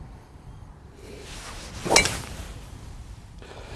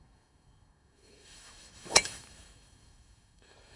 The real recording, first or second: first